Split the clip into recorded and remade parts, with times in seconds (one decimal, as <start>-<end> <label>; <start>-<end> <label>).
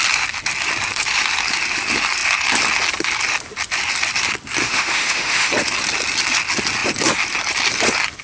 0.0-4.6 recorded; 4.6-5.5 remade; 5.5-8.2 recorded